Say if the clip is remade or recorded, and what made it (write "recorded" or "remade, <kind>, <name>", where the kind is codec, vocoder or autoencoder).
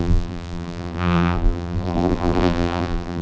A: remade, vocoder, BigVGAN v2